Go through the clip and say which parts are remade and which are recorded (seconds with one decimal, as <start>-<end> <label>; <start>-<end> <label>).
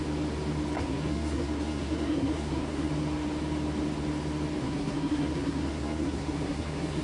0.0-0.8 recorded; 0.8-2.9 remade; 2.9-4.6 recorded; 4.6-7.0 remade